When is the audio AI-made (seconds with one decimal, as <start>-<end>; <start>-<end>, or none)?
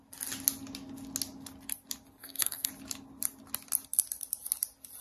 2.2-2.7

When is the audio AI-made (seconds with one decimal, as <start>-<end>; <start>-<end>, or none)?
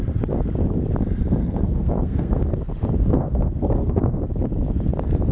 1.4-2.4; 3.0-4.2